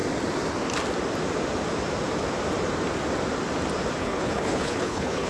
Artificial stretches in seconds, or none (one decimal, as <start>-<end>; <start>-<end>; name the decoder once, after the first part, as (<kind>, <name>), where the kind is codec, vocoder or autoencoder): 4.0-5.3 (codec, HILCodec)